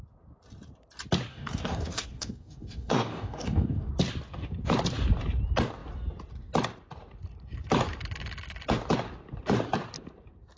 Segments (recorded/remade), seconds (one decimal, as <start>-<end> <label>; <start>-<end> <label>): 0.0-1.3 recorded; 1.3-3.9 remade; 3.9-10.6 recorded